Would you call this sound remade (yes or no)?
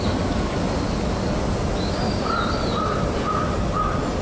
no